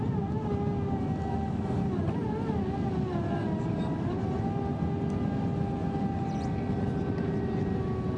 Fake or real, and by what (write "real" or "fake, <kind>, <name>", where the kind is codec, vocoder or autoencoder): real